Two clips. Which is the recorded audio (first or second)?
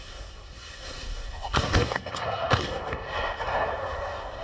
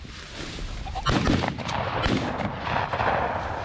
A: second